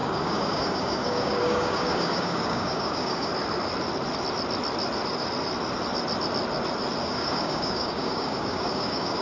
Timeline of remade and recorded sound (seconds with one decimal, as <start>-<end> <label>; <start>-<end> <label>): 0.0-3.3 remade; 3.3-7.0 recorded; 7.0-9.2 remade